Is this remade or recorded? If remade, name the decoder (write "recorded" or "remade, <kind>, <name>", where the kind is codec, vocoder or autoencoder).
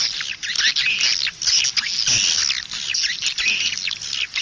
recorded